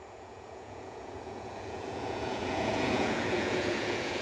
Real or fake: fake